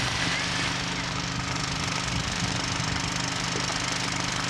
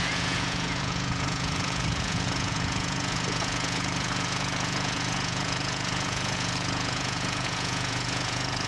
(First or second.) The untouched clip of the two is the first